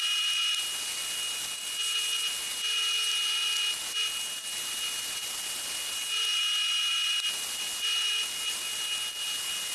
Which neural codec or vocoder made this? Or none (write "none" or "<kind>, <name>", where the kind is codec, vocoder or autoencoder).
none